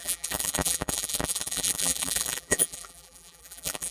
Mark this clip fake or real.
fake